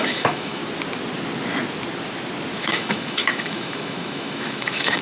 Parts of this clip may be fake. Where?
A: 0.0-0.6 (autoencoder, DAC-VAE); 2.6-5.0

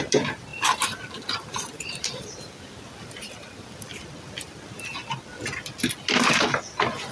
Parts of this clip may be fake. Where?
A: 0.5-4.0 (vocoder, BigVGAN v2)

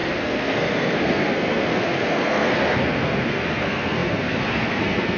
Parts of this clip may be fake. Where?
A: 0.0-5.2 (codec, SNAC)

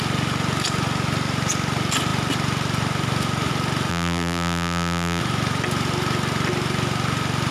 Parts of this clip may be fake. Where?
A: 3.9-5.2 (vocoder, BigVGAN v2)

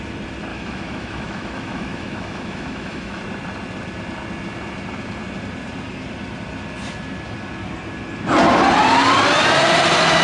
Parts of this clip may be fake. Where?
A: 0.5-3.2 (autoencoder, DAC-VAE)